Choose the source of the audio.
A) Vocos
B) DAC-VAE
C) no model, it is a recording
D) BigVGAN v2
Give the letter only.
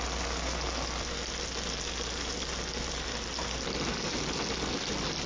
C